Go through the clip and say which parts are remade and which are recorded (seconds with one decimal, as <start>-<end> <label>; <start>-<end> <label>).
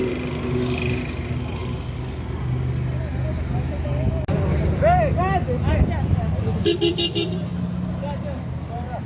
0.0-9.1 recorded